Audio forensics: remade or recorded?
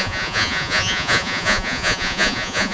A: remade